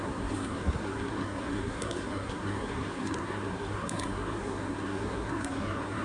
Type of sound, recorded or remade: remade